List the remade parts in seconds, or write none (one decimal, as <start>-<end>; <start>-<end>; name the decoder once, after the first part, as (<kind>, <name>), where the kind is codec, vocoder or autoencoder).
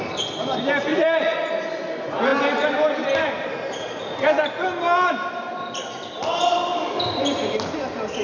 0.9-1.5 (vocoder, Vocos)